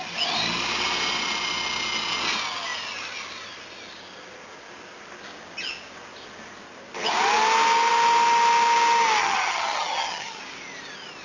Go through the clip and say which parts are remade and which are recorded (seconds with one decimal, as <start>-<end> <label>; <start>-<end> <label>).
0.0-9.2 recorded; 9.2-10.4 remade; 10.4-11.2 recorded